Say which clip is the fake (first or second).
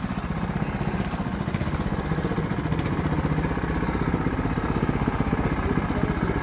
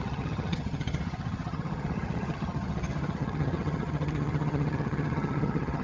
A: second